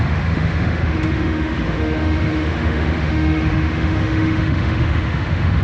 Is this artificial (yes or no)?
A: yes